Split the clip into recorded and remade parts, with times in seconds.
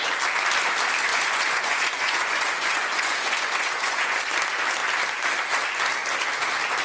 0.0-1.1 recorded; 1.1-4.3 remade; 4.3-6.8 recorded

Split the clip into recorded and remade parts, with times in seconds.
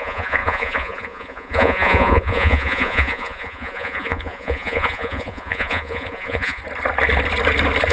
0.0-6.6 remade; 6.6-7.9 recorded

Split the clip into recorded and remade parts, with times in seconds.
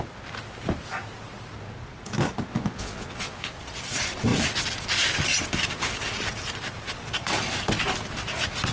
0.0-2.5 recorded; 2.5-3.5 remade; 3.5-8.7 recorded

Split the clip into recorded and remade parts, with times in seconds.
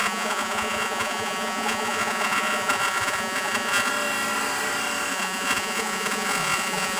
0.0-3.9 remade; 3.9-5.1 recorded; 5.1-7.0 remade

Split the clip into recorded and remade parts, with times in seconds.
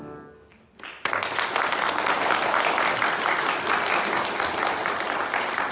0.0-5.7 recorded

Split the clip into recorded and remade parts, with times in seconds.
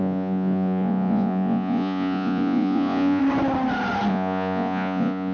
0.0-3.2 remade; 3.2-4.1 recorded; 4.1-5.3 remade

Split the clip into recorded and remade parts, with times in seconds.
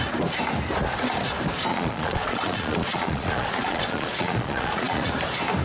0.0-1.7 recorded; 1.7-5.1 remade; 5.1-5.6 recorded